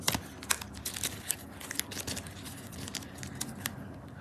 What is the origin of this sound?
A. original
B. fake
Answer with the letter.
A